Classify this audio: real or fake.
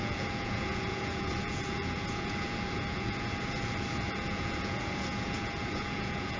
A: fake